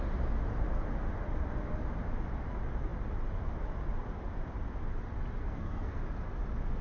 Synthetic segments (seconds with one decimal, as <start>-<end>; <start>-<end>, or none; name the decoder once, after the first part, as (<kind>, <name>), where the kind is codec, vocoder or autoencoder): 5.4-6.0 (codec, SNAC)

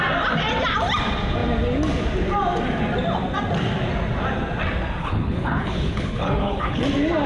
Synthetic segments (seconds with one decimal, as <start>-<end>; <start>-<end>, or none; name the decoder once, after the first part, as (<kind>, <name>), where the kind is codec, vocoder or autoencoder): 5.0-6.8 (codec, HILCodec)

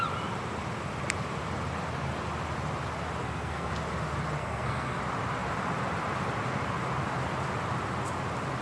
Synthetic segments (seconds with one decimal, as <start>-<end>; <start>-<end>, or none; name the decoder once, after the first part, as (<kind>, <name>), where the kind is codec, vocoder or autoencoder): 3.2-3.7 (codec, SNAC); 4.4-5.0

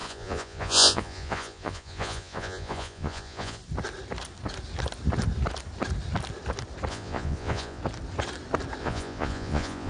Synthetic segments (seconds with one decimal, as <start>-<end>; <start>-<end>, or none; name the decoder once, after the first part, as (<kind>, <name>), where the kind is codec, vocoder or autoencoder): 0.0-3.6 (vocoder, Vocos); 6.9-7.8; 8.8-9.9

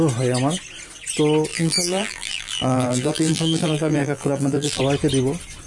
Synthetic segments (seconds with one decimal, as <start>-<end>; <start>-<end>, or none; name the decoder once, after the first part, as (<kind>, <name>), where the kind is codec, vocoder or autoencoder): 1.5-4.8 (vocoder, BigVGAN v2)

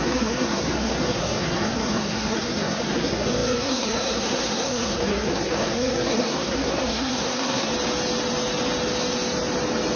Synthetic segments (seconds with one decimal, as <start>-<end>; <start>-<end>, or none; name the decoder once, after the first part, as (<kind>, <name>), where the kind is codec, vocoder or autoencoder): 0.0-7.7 (codec, SNAC)